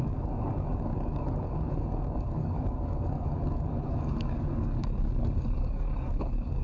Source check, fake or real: fake